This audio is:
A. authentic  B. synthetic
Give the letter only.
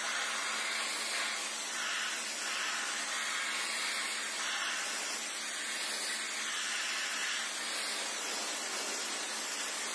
A